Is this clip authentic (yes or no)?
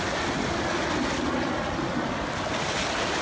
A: yes